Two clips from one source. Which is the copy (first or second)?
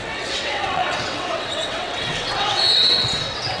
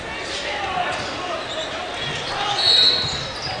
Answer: first